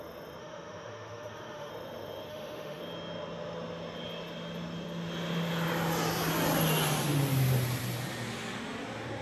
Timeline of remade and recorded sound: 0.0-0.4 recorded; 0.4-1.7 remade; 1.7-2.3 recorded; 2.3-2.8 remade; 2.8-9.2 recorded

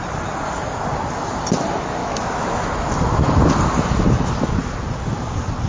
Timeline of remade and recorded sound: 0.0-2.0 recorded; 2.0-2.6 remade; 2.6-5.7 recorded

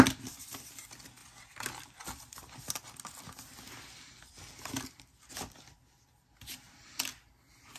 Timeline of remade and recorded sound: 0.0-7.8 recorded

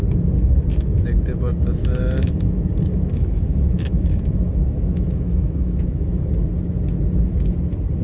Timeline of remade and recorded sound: 0.0-1.5 recorded; 1.5-6.3 remade; 6.3-8.0 recorded

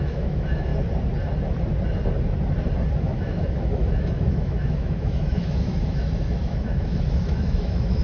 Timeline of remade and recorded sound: 0.0-0.7 remade; 0.7-3.0 recorded; 3.0-8.0 remade